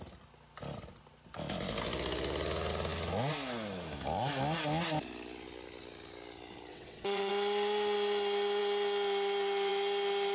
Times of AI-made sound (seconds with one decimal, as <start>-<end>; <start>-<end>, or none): 6.7-7.3